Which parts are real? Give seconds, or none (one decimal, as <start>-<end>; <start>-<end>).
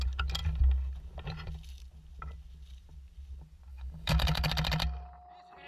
0.0-3.7; 4.5-5.7